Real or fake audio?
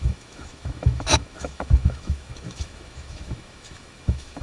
fake